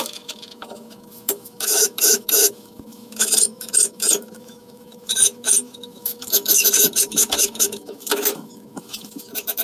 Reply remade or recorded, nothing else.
remade